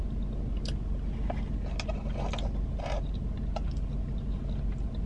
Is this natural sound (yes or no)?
yes